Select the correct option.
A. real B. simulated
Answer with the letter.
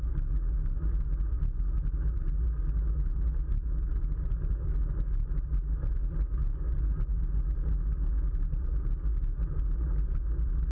A